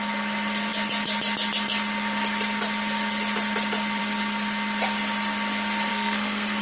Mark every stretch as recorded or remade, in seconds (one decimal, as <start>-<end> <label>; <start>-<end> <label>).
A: 0.0-5.9 recorded; 5.9-6.6 remade